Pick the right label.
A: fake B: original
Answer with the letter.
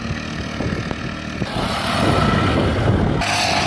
B